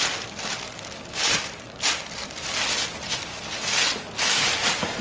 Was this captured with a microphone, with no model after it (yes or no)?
yes